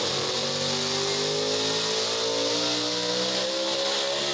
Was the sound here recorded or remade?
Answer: recorded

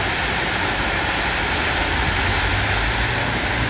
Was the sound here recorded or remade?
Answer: recorded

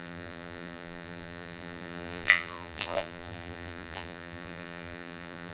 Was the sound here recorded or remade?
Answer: remade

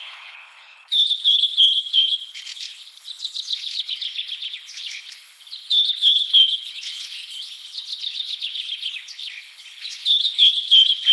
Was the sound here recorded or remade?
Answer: remade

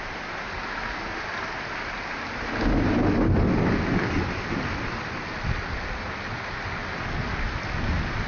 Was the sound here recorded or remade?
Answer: recorded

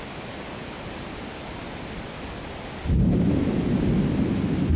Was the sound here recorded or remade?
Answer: recorded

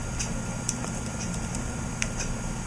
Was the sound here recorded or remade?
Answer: recorded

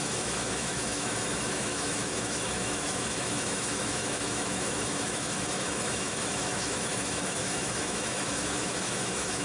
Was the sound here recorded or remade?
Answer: remade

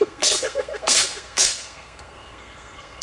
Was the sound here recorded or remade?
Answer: remade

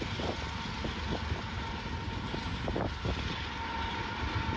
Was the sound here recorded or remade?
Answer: recorded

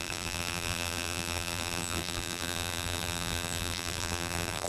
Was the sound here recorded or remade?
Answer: remade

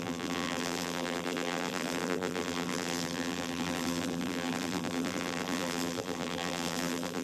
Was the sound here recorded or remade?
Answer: remade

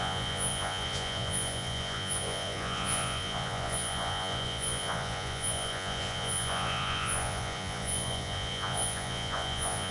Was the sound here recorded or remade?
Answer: remade